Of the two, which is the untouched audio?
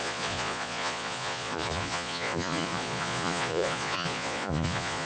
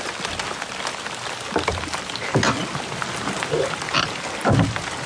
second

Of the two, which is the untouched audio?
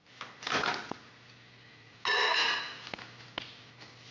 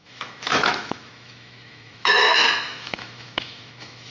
first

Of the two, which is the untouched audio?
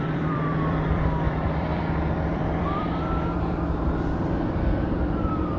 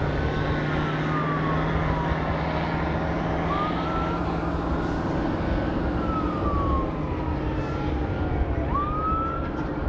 second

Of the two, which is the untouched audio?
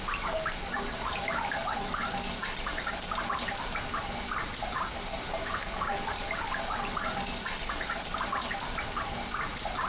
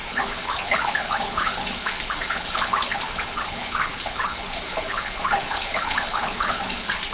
first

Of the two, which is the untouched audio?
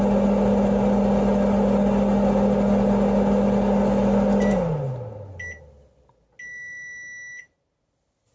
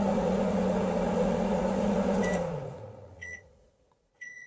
first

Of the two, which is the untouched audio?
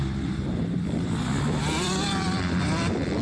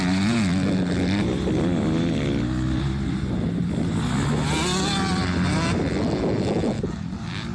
second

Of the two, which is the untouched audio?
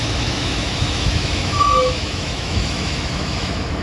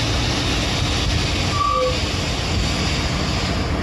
second